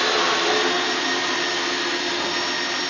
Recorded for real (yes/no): yes